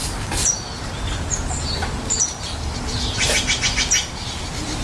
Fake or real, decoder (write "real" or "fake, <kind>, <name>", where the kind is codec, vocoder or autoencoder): real